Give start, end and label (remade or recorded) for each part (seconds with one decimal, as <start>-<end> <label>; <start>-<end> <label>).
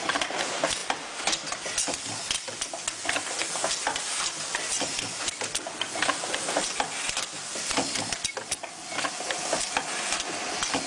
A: 0.0-10.9 recorded